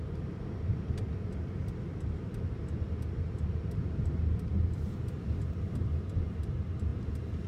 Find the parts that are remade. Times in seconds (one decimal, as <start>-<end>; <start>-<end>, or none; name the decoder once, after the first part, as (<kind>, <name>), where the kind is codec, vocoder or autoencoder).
none